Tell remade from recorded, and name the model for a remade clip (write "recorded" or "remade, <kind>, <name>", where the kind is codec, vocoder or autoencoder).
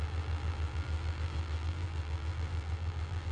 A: remade, vocoder, BigVGAN v2